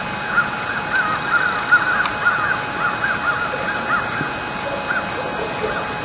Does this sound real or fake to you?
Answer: real